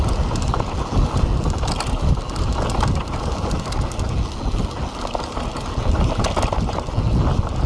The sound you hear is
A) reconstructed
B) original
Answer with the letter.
B